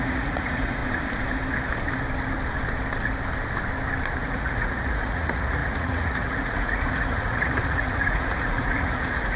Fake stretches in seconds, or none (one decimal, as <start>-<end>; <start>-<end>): 0.0-0.8; 4.2-9.4